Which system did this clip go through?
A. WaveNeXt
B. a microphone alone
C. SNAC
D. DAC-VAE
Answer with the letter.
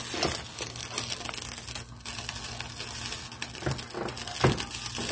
B